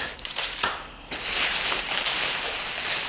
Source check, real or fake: fake